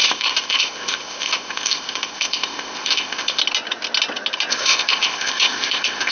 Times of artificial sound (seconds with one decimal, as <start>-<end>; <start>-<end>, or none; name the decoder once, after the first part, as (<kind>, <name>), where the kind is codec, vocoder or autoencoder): 0.0-3.4 (codec, ZipCodec); 4.5-6.1